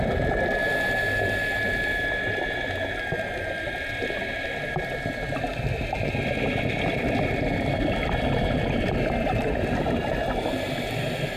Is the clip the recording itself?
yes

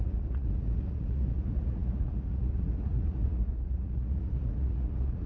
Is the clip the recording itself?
no